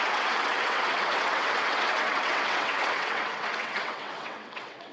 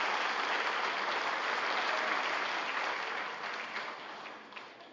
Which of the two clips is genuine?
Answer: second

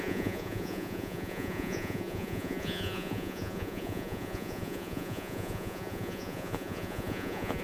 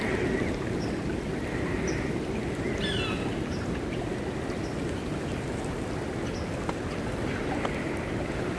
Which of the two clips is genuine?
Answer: second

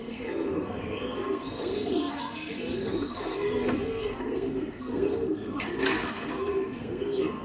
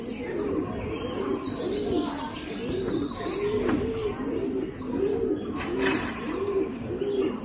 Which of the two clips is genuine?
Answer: second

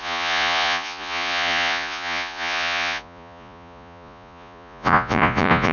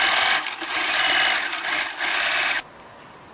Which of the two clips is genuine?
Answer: second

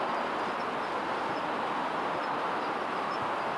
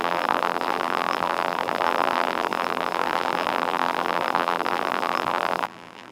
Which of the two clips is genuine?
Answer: first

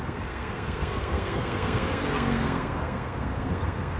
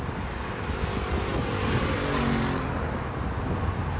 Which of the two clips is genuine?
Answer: second